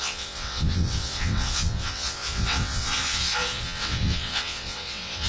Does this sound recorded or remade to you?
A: remade